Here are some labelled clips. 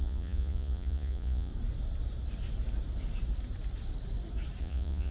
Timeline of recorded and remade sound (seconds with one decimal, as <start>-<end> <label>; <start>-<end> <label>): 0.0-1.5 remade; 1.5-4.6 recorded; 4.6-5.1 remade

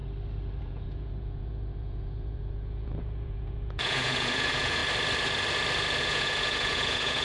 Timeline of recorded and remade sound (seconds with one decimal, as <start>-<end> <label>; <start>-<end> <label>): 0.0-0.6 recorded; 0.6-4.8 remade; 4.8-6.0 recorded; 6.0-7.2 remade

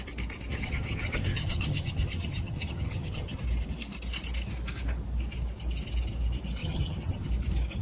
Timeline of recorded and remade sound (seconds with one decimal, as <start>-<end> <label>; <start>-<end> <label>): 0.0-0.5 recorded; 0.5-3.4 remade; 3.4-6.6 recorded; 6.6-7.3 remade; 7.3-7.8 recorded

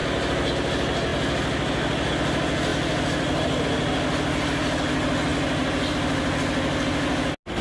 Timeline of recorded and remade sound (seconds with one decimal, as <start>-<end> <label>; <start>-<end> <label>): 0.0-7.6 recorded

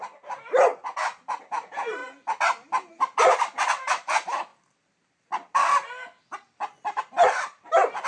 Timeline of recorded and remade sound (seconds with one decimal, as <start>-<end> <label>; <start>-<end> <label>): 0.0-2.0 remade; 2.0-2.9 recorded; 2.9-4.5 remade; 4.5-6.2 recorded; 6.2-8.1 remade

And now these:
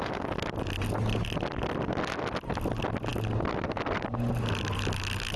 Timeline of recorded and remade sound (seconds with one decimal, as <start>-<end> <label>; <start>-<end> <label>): 0.0-5.4 recorded

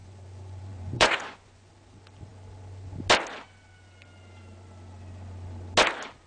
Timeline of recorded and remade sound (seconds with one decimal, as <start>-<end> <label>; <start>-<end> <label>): 0.0-1.7 remade; 1.7-6.3 recorded